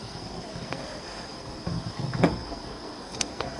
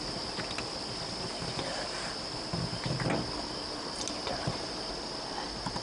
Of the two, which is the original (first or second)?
second